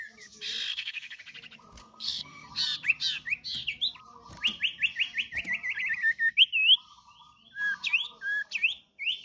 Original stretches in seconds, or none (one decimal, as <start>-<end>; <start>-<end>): 0.0-0.7; 1.2-1.8; 2.5-9.2